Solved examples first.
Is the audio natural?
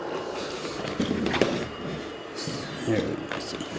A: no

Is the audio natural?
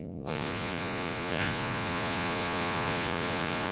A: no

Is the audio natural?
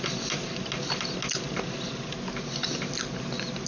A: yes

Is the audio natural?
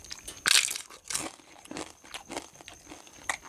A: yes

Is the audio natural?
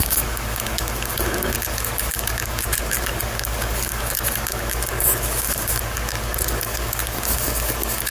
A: no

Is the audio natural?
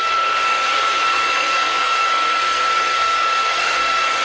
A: no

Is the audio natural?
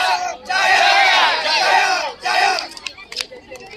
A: yes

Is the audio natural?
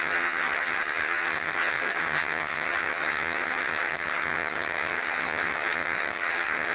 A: no